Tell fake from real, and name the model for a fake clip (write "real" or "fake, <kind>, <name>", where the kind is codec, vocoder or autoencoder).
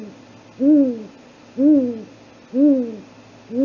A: real